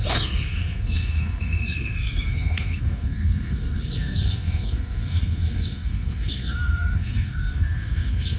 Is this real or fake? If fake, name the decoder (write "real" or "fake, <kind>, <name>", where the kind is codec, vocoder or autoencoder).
fake, codec, SNAC